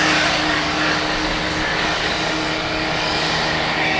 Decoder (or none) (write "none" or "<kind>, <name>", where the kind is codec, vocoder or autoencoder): codec, DAC